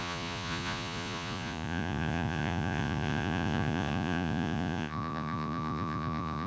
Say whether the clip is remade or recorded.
remade